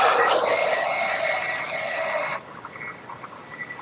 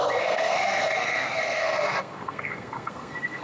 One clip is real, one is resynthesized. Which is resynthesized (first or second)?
second